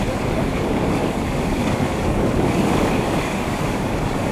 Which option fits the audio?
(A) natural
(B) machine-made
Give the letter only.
B